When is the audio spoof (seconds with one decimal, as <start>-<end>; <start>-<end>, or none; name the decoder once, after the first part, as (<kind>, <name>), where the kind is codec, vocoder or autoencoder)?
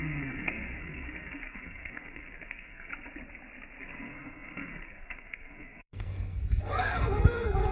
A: 0.0-2.9 (codec, SNAC); 3.8-7.7